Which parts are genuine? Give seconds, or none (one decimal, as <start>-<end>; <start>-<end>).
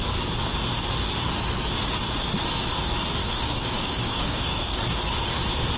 0.0-3.2; 4.8-5.8